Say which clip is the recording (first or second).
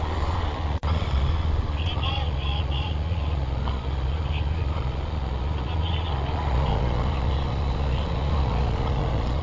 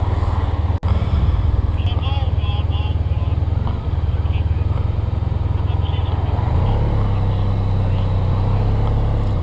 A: second